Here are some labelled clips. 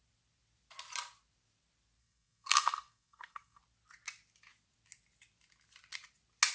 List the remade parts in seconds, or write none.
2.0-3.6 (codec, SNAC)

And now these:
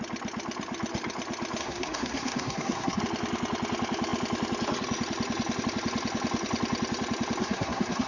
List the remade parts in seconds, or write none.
1.6-3.0 (codec, SNAC); 7.4-8.1

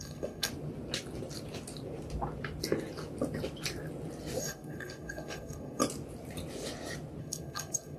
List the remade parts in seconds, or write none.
0.0-0.5 (codec, SNAC); 4.4-5.8; 7.2-8.0

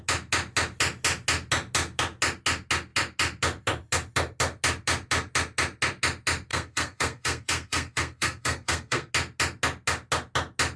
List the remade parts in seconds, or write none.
6.5-9.1 (codec, SNAC)

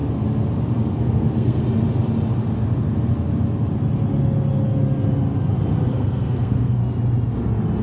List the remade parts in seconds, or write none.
0.9-1.6 (codec, SNAC); 5.9-6.8